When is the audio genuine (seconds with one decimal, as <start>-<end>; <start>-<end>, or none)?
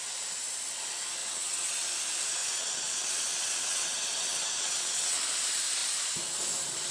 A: 0.0-1.2; 1.7-2.4; 5.2-6.9